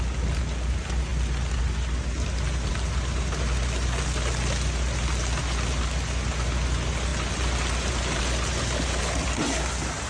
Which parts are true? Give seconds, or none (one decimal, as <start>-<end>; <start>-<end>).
0.0-10.1